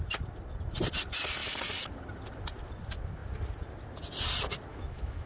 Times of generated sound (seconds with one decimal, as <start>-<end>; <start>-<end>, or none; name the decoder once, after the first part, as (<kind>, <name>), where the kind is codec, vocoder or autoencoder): 4.7-5.3 (autoencoder, DAC-VAE)